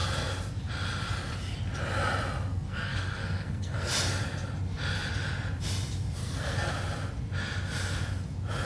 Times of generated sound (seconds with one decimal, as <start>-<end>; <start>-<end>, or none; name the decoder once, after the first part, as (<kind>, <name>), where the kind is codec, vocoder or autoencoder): 2.5-3.9 (codec, SNAC); 6.2-6.7